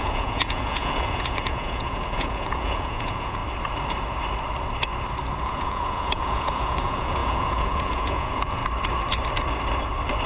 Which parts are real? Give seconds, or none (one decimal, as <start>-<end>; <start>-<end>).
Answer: 3.4-5.4; 8.6-10.3